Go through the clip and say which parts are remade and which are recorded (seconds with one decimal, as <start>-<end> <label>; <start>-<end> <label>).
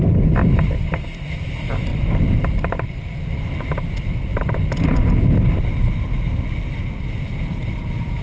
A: 0.0-1.9 recorded; 1.9-2.9 remade; 2.9-4.3 recorded; 4.3-5.1 remade; 5.1-8.2 recorded